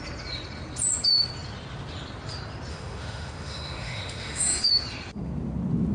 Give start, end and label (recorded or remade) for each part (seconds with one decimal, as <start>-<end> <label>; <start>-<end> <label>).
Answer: 0.0-2.7 recorded; 2.7-4.7 remade; 4.7-5.9 recorded